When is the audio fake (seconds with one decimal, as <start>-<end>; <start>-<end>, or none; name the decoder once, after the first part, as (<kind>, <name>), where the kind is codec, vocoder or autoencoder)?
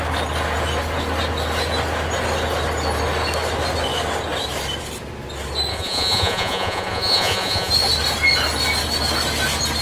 5.7-7.7 (vocoder, Vocos)